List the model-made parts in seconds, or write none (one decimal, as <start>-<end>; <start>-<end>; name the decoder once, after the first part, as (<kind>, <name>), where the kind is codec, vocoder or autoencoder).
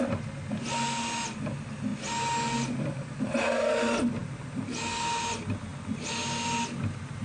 none